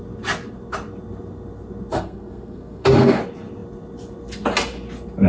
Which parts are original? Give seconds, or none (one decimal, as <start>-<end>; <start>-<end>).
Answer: 0.0-1.9; 3.2-5.3